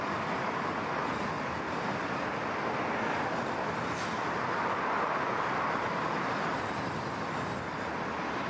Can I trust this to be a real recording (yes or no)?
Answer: yes